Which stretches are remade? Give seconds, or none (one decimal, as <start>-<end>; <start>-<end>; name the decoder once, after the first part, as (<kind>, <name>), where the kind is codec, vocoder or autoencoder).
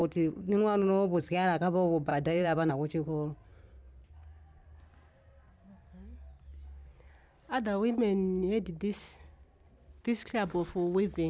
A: 2.1-2.7 (vocoder, BigVGAN v2)